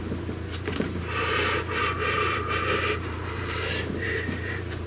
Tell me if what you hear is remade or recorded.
remade